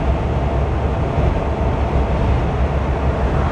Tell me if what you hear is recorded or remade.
recorded